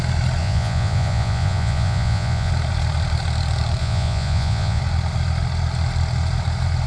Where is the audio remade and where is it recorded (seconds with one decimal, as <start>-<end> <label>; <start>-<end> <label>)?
0.0-0.4 recorded; 0.4-2.5 remade; 2.5-3.8 recorded; 3.8-4.8 remade; 4.8-6.9 recorded